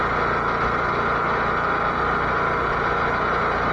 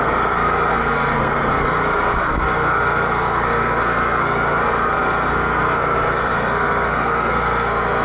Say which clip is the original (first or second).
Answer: first